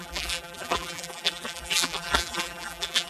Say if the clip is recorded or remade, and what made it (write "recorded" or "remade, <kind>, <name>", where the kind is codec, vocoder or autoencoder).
remade, vocoder, BigVGAN v2